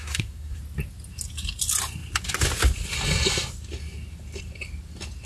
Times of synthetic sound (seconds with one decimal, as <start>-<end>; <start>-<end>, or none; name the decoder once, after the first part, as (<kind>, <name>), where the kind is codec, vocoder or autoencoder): 0.0-0.6 (codec, SNAC)